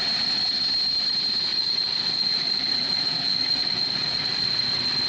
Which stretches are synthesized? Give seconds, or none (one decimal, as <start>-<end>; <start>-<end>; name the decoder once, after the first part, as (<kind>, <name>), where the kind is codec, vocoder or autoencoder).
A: 1.5-4.6 (vocoder, Vocos)

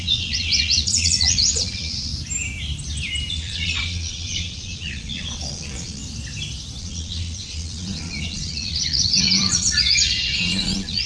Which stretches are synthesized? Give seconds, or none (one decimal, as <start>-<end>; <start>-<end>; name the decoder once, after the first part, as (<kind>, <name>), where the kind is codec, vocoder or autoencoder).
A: 0.0-2.1 (vocoder, Vocos); 3.3-6.0; 6.8-11.1

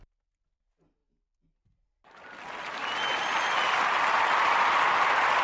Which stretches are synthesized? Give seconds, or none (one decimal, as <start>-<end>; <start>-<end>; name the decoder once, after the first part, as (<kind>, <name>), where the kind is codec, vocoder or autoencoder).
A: none

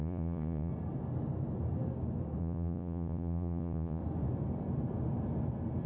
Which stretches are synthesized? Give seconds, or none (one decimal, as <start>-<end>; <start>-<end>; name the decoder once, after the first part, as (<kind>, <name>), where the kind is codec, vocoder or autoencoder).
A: 0.0-0.7 (vocoder, Vocos); 2.4-4.0